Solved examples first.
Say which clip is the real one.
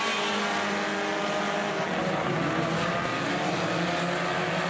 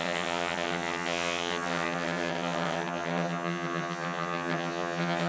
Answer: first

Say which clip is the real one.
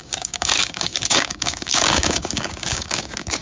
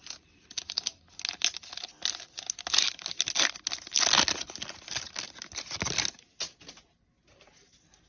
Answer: second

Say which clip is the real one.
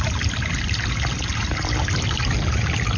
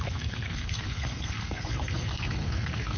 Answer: first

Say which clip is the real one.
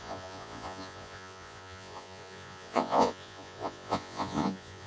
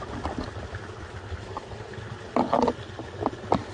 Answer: second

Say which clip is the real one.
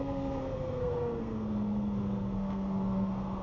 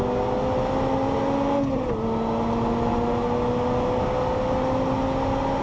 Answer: second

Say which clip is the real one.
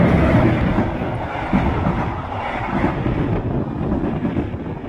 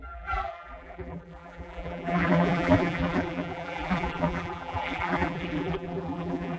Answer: first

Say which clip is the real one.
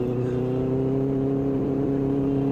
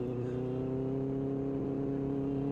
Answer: second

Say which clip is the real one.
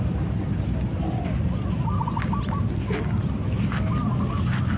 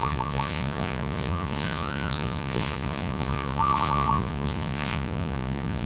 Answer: first